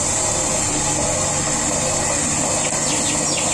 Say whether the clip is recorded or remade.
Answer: recorded